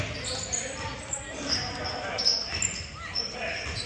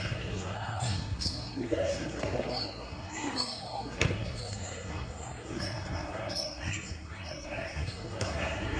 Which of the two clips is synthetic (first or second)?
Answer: second